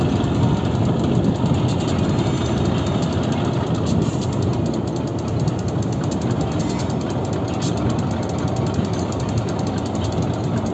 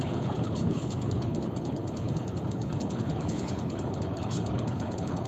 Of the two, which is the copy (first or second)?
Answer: second